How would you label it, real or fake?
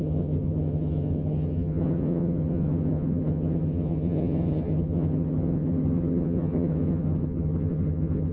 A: fake